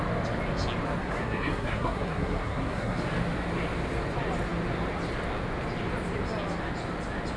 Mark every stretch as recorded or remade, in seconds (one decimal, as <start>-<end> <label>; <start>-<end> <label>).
0.0-1.0 recorded; 1.0-3.0 remade; 3.0-7.4 recorded